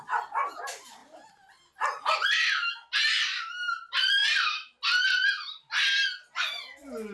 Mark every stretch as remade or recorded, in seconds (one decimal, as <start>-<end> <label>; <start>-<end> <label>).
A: 0.0-7.1 recorded

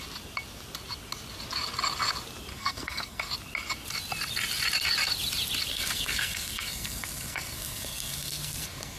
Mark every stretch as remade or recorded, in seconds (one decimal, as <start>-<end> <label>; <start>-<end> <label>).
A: 0.0-2.5 recorded; 2.5-3.2 remade; 3.2-5.7 recorded; 5.7-9.0 remade

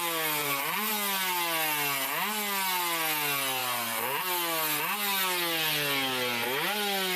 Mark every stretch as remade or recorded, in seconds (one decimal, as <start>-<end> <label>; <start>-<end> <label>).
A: 0.0-0.4 recorded; 0.4-0.9 remade; 0.9-3.6 recorded; 3.6-4.2 remade; 4.2-7.2 recorded

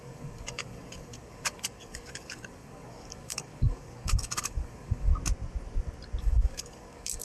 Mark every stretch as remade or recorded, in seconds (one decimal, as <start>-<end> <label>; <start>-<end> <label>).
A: 0.0-5.1 remade; 5.1-6.2 recorded; 6.2-7.2 remade

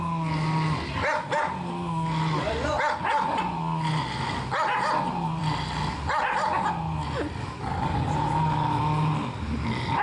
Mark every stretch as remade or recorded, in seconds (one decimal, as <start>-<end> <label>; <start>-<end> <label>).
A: 0.0-10.0 recorded

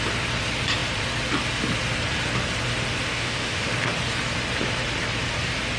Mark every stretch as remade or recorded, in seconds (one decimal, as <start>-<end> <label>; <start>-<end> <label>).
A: 0.0-3.1 recorded; 3.1-3.7 remade; 3.7-5.8 recorded

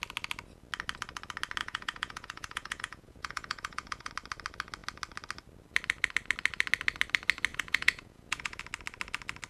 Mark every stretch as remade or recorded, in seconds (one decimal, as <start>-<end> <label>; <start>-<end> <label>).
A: 0.0-1.6 recorded; 1.6-4.1 remade; 4.1-7.5 recorded; 7.5-8.6 remade; 8.6-9.5 recorded

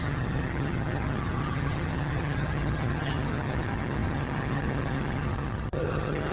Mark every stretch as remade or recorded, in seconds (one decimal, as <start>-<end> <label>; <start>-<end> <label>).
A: 0.0-6.3 remade